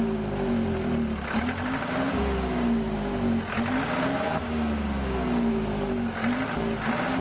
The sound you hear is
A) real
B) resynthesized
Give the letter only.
A